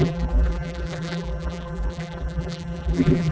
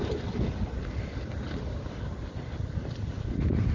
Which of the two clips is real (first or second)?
second